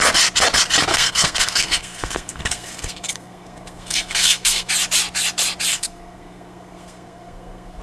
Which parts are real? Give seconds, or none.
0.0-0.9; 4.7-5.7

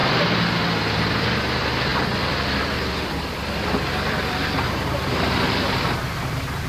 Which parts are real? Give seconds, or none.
0.0-0.6; 1.9-2.6

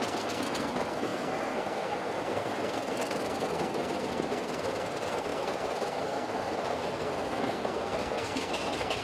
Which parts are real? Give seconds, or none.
none

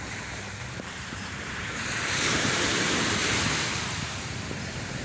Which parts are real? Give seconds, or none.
3.2-3.8

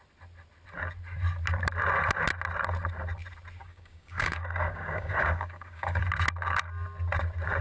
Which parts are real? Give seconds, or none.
0.0-3.6; 6.0-7.6